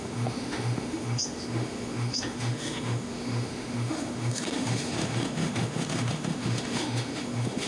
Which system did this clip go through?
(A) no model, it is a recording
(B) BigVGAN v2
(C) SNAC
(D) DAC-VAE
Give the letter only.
D